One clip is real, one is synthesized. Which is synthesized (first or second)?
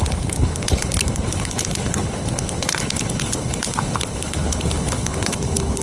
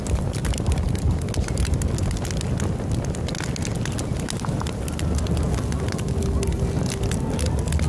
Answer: first